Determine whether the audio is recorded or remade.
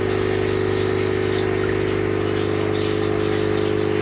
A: recorded